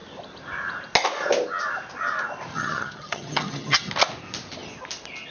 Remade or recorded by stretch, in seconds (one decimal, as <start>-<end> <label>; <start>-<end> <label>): 0.0-2.5 recorded; 2.5-3.9 remade; 3.9-5.3 recorded